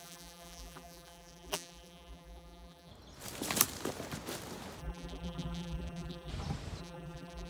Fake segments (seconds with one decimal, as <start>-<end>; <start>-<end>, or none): 0.0-2.9; 4.8-6.3; 6.8-7.5